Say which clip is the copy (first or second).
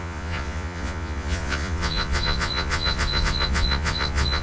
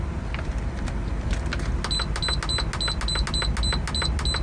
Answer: first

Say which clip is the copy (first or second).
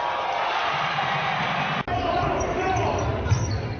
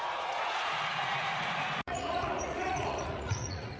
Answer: second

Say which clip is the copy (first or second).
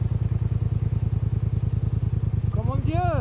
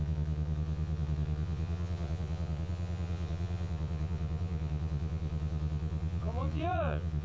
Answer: second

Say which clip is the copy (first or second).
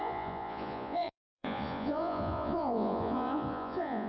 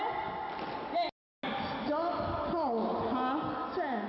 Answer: first